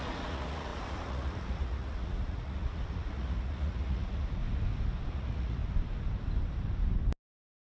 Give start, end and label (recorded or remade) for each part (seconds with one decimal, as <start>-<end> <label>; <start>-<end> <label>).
0.0-4.4 remade; 4.4-5.1 recorded; 5.1-5.6 remade; 5.6-7.6 recorded